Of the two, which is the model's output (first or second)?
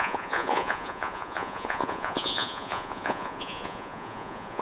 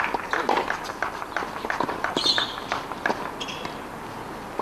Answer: first